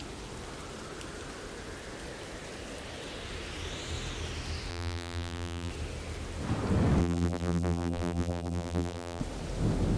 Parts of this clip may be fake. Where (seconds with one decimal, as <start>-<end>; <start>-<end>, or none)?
4.7-5.7; 7.0-9.2